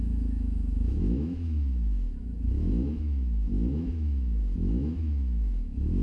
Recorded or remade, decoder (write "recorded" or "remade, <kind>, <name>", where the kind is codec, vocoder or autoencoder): remade, autoencoder, DAC-VAE